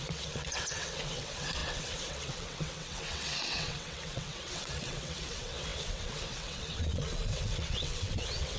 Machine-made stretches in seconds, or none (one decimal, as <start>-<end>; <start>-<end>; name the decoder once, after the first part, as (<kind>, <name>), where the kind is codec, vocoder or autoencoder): 0.0-8.6 (vocoder, WaveNeXt)